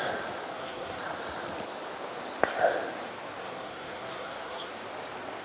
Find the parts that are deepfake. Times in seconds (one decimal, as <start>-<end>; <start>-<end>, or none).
0.5-1.0; 3.4-4.7